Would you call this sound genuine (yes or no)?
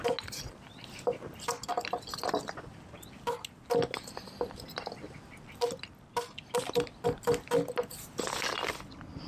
yes